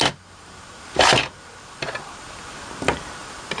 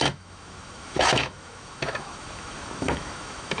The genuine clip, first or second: first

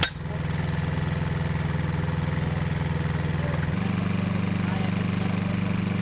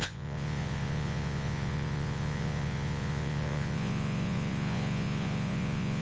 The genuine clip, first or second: first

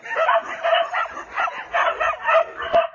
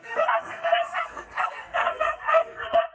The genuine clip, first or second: first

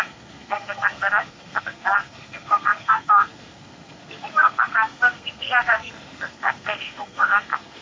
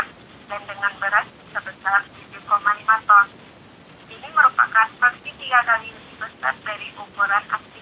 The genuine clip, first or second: second